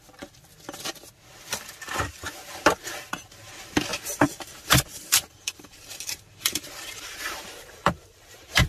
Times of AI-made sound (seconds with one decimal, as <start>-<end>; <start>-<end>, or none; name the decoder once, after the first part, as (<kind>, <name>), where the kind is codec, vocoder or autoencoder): 3.9-8.7 (vocoder, BigVGAN v2)